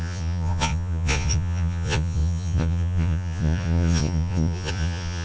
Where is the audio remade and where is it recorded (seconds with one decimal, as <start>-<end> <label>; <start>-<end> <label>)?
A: 0.0-5.2 remade